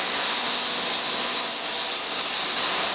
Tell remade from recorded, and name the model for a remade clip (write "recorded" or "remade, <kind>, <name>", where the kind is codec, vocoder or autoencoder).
recorded